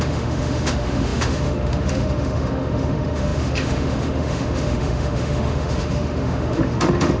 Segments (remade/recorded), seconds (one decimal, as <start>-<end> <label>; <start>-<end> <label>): 0.0-7.2 remade